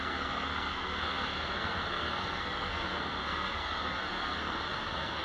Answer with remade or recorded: remade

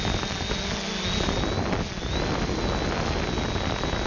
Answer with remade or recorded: recorded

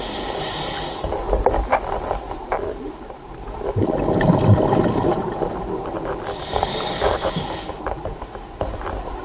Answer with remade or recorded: recorded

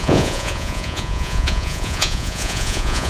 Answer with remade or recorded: remade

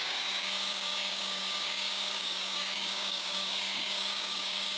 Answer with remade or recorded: remade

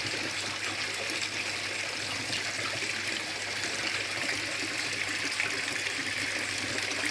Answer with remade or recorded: recorded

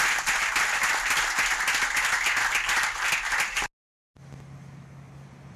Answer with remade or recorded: recorded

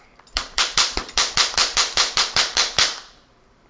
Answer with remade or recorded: remade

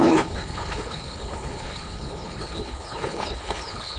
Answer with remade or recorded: remade